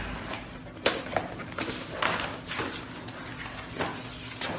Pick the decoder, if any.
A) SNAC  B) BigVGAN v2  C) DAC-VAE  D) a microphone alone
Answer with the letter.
D